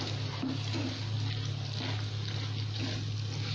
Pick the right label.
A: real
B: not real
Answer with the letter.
A